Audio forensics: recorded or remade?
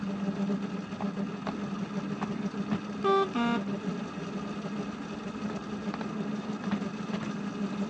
recorded